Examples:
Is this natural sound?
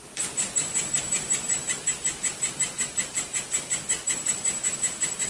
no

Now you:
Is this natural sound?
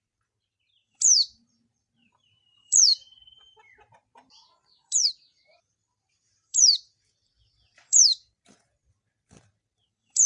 no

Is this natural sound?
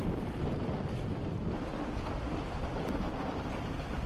yes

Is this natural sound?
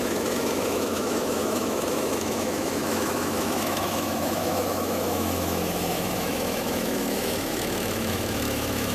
no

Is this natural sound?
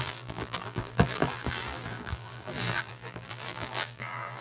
no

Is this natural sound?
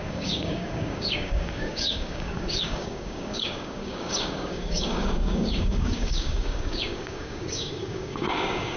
no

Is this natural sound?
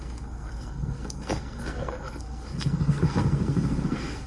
no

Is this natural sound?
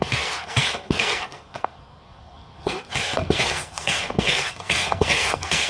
no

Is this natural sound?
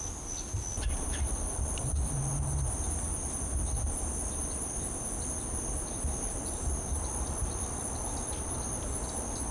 yes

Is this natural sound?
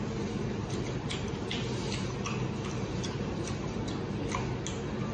yes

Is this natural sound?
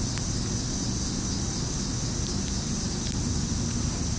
yes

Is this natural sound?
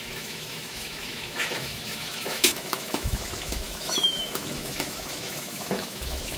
no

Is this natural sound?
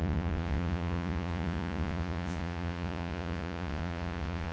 no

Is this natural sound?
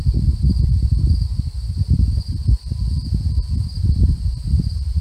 no